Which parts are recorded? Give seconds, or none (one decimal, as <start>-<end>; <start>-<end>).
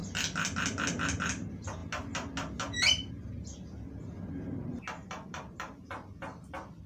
0.0-6.9